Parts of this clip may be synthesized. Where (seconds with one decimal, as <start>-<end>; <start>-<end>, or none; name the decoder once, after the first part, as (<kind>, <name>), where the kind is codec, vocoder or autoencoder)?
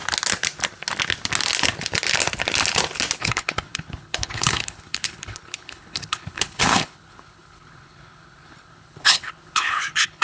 3.2-10.2 (codec, HILCodec)